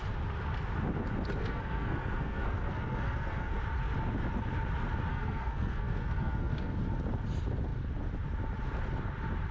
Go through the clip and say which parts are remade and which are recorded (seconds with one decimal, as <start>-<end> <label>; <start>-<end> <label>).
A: 0.0-1.4 recorded; 1.4-3.5 remade; 3.5-5.1 recorded; 5.1-6.8 remade; 6.8-9.5 recorded